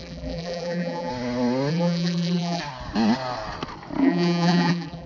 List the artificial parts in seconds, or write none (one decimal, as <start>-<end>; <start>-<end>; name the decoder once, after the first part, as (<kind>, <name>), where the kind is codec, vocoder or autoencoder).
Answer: 0.0-1.1 (vocoder, BigVGAN v2); 1.7-2.6; 4.0-5.1